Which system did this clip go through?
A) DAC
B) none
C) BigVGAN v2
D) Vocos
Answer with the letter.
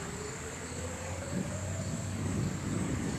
A